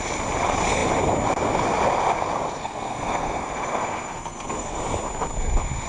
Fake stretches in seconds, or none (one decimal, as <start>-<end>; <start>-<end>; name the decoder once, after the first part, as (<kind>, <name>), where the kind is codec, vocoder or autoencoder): 2.6-4.8 (codec, SNAC)